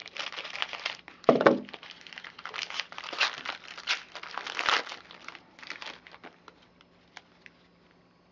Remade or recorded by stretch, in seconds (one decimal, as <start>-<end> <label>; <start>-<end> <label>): 0.0-3.9 remade; 3.9-8.3 recorded